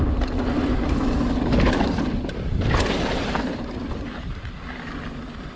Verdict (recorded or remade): recorded